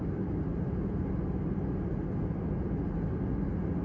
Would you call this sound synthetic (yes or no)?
no